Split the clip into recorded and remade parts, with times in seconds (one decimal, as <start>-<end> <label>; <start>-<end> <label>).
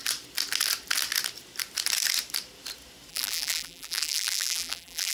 0.0-3.1 recorded; 3.1-5.1 remade